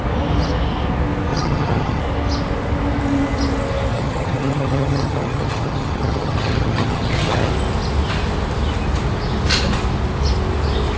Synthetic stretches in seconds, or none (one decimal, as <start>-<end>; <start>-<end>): 1.3-2.0; 3.9-7.5